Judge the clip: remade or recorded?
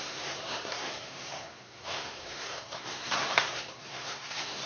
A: remade